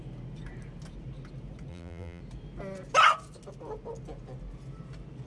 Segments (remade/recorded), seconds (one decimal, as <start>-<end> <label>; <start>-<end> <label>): 0.0-1.7 recorded; 1.7-2.2 remade; 2.2-5.3 recorded